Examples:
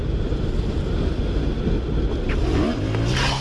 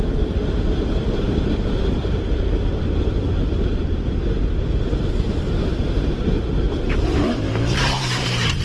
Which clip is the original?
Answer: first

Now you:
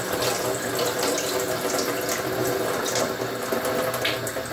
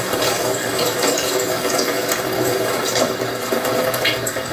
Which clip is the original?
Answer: first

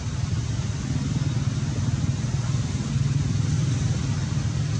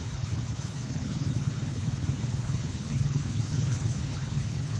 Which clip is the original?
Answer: first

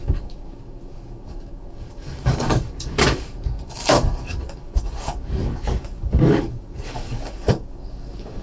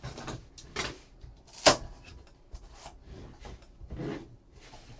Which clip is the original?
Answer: second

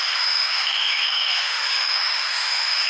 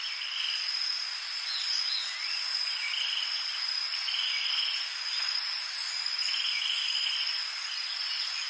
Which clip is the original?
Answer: second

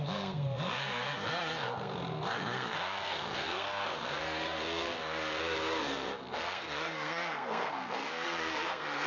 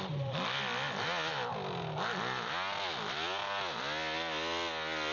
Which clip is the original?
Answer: second